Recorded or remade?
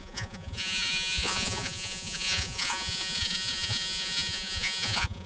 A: remade